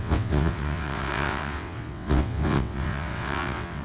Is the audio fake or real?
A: fake